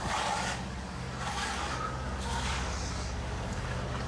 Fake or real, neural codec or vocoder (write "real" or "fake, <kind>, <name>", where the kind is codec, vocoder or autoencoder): fake, codec, DAC